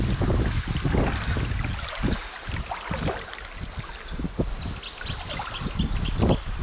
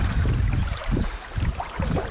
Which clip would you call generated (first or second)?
second